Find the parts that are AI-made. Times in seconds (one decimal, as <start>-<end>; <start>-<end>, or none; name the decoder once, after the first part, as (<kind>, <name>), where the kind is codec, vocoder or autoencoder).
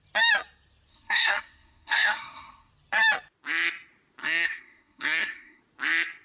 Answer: 0.9-2.7 (codec, SNAC); 4.2-5.6